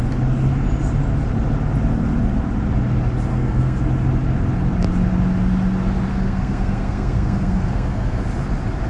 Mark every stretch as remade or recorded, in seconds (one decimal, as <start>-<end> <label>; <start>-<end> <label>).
0.0-3.3 recorded; 3.3-3.8 remade; 3.8-6.1 recorded; 6.1-8.2 remade; 8.2-8.9 recorded